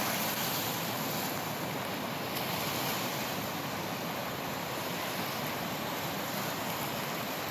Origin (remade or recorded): recorded